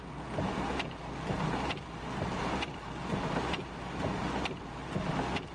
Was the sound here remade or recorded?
recorded